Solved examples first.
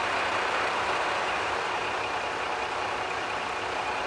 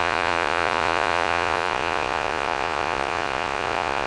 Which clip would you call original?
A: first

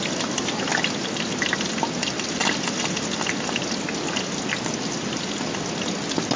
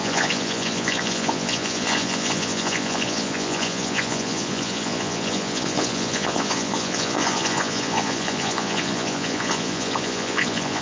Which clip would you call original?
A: first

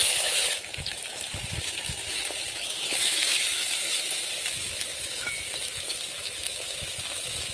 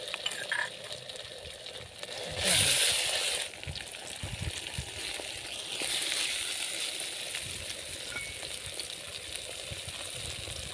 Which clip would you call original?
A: second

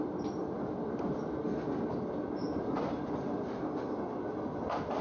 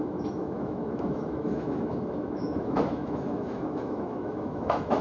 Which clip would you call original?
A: first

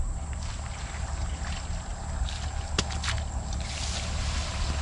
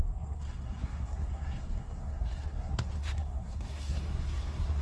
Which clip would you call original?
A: first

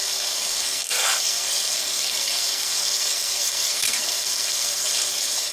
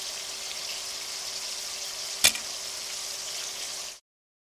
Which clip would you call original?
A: second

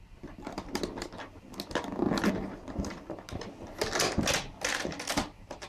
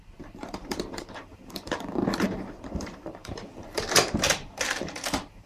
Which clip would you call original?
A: first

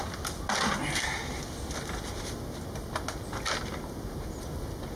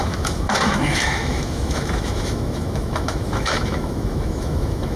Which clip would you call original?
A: first